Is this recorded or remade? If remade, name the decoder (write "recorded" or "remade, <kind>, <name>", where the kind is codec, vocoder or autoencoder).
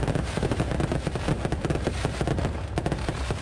recorded